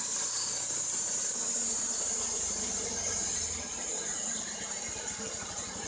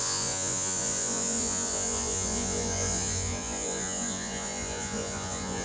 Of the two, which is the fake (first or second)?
second